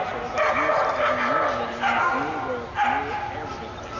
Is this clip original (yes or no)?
yes